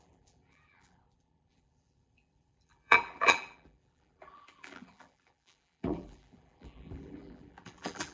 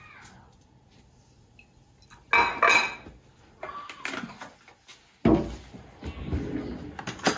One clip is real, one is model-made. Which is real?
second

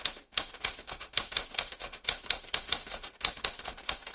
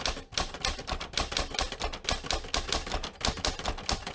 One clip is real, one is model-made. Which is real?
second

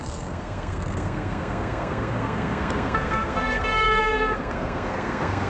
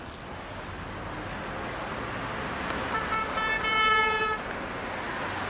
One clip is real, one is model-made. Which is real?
second